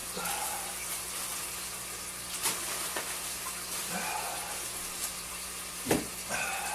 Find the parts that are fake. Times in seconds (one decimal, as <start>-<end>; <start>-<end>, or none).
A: none